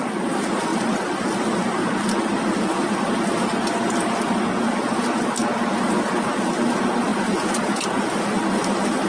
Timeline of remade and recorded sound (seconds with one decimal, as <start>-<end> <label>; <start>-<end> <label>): 0.0-9.1 recorded